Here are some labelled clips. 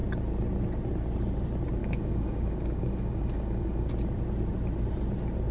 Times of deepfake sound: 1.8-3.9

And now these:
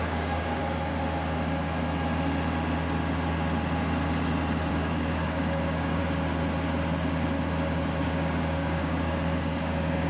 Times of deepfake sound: 0.0-0.6; 4.7-6.0; 8.0-10.1

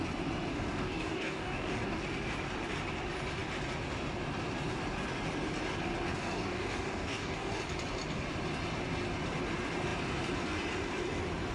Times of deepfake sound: 0.5-2.0; 6.1-7.6

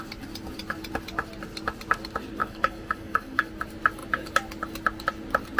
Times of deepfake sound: 2.4-3.5

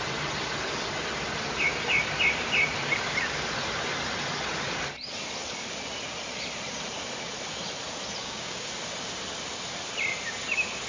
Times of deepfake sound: 8.2-8.7

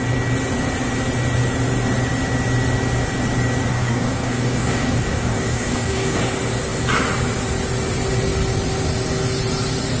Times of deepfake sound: 3.7-6.2

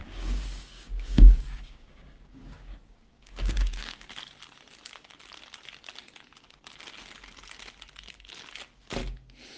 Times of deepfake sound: 0.0-4.1; 9.0-9.6

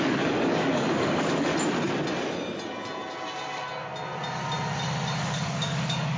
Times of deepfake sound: 0.0-1.5; 5.2-6.2